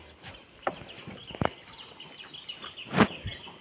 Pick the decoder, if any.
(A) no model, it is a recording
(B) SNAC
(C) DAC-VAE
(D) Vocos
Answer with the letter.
A